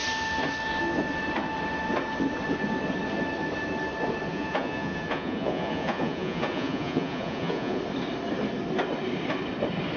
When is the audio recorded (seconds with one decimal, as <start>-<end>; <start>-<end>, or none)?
0.0-4.3; 7.8-10.0